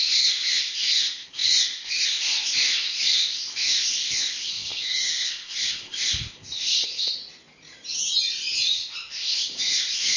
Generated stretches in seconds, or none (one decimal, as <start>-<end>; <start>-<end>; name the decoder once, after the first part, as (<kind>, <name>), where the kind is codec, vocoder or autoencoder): 0.0-7.2 (codec, ZipCodec); 9.1-10.2